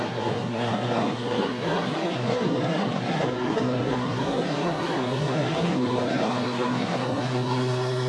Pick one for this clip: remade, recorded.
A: remade